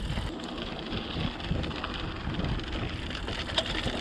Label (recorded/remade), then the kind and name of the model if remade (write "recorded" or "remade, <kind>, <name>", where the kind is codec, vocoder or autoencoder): recorded